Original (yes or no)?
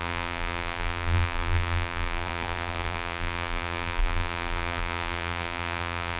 no